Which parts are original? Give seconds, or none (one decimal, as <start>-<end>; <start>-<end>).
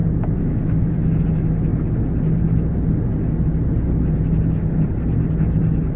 1.2-6.0